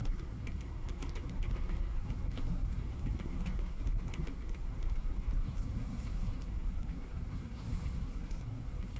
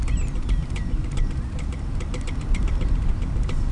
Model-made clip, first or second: first